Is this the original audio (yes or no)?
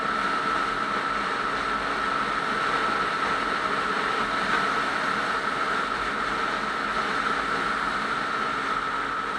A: yes